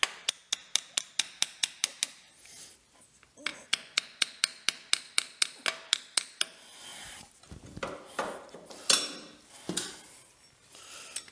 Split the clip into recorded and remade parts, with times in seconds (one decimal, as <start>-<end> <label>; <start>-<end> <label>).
0.0-3.5 recorded; 3.5-4.4 remade; 4.4-11.3 recorded